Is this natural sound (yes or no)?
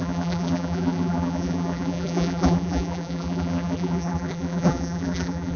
no